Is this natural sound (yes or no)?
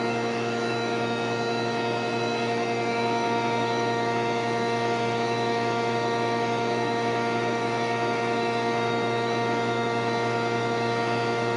no